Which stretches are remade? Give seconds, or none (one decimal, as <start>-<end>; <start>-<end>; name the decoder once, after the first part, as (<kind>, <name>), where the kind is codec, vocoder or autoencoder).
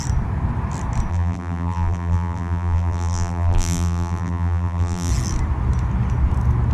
1.1-5.1 (vocoder, BigVGAN v2)